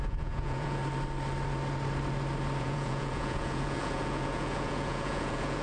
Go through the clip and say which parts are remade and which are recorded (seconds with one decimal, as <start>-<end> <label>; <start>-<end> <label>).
0.0-0.8 remade; 0.8-2.6 recorded; 2.6-5.6 remade